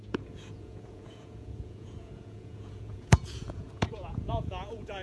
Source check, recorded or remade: remade